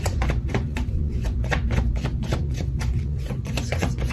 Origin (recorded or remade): remade